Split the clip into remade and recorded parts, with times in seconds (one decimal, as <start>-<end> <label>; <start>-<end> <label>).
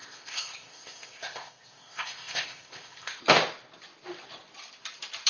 0.0-3.2 remade; 3.2-5.3 recorded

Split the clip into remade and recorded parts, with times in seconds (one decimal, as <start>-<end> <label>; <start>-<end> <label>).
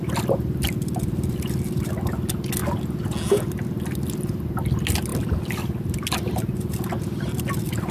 0.0-7.9 recorded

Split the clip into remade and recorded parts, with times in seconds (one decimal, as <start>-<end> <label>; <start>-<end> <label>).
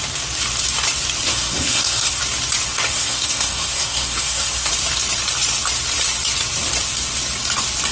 0.0-1.3 recorded; 1.3-2.2 remade; 2.2-2.9 recorded; 2.9-4.7 remade; 4.7-7.9 recorded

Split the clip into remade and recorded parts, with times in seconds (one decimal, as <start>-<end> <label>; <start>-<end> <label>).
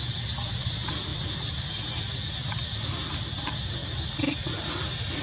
0.0-5.2 recorded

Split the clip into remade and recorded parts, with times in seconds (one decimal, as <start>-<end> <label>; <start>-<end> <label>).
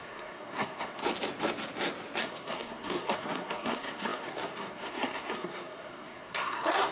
0.0-1.0 remade; 1.0-2.2 recorded; 2.2-6.9 remade